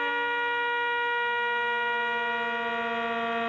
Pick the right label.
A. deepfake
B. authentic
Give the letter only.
B